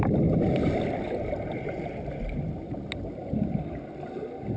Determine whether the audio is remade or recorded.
recorded